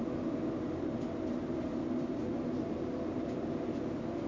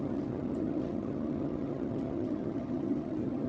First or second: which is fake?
second